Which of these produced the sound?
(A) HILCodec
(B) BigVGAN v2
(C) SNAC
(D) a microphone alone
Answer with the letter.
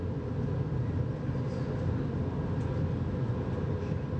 D